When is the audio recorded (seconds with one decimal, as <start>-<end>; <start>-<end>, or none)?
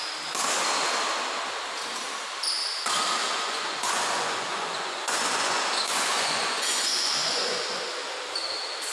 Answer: 0.0-3.2; 7.8-8.9